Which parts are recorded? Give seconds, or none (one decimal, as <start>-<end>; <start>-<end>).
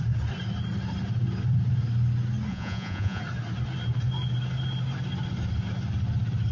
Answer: 0.0-2.5; 3.2-6.5